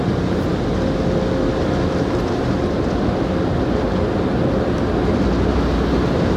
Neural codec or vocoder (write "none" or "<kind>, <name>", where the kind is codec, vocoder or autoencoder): none